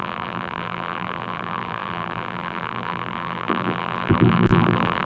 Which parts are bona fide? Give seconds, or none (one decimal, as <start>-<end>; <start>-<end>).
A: none

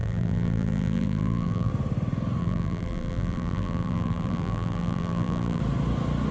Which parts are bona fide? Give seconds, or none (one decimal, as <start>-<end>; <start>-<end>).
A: 1.7-2.4; 5.6-6.3

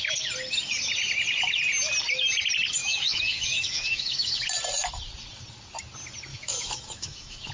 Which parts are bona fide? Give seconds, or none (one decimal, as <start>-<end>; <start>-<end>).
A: 0.0-2.8; 4.4-6.3